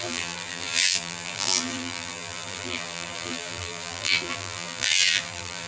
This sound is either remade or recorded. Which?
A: remade